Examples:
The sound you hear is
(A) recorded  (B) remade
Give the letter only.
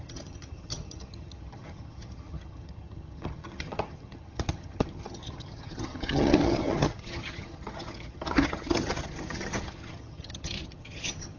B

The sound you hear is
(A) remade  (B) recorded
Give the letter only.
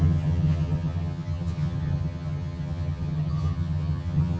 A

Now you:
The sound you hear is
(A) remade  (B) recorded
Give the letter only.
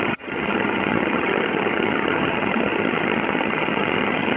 A